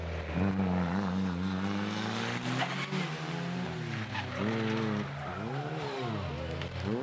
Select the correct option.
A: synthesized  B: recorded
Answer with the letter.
B